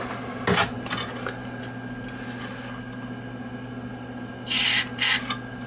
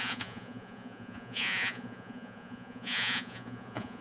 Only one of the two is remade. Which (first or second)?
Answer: second